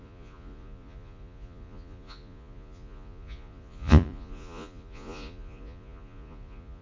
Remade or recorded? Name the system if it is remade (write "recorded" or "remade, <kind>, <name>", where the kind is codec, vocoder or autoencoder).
remade, vocoder, Vocos